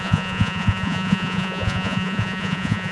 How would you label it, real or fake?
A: fake